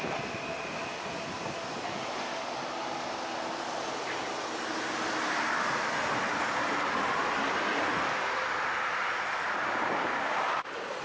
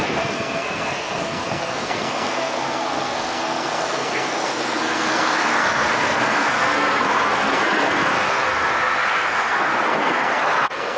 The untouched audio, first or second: first